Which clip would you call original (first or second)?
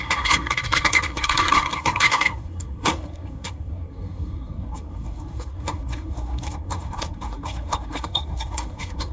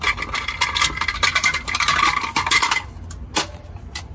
second